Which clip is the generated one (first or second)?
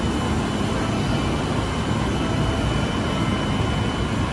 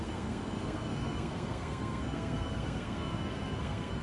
second